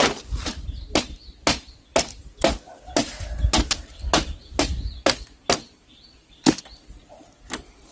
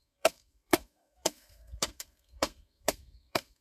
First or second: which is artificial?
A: second